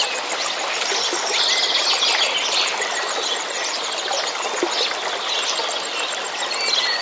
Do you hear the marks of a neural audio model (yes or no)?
no